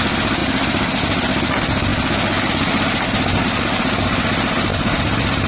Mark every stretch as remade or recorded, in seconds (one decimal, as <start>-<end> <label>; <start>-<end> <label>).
0.0-0.4 recorded; 0.4-1.0 remade; 1.0-4.7 recorded; 4.7-5.5 remade